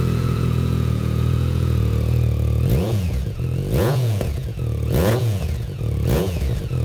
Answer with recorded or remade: remade